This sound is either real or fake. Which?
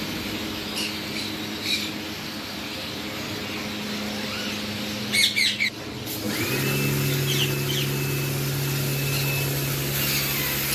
real